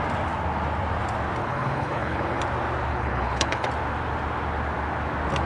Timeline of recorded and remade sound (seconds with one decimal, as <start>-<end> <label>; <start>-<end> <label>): 0.0-1.4 recorded; 1.4-2.4 remade; 2.4-2.9 recorded; 2.9-3.7 remade; 3.7-5.5 recorded